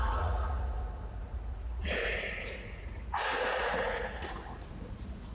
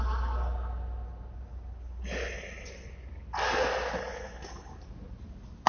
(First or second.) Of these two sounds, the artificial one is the first